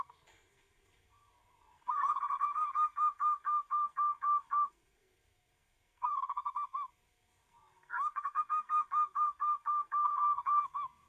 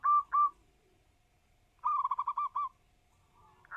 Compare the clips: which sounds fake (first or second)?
first